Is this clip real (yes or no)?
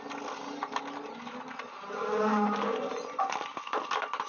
yes